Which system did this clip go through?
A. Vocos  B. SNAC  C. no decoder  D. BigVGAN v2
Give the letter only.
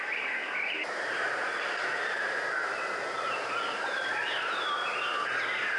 D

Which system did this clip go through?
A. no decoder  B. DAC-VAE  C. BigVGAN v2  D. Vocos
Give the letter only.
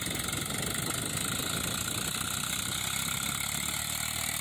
A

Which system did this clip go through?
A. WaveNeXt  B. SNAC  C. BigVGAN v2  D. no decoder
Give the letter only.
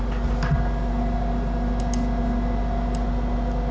D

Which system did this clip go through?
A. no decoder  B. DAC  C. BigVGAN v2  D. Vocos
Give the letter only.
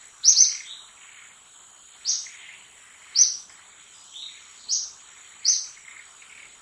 A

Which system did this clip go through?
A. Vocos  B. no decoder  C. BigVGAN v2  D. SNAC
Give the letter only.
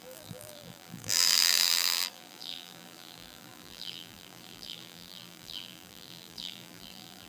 C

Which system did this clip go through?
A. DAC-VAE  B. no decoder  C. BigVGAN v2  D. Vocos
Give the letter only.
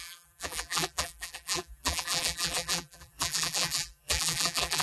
C